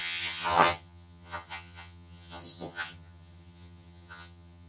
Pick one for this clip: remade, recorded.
remade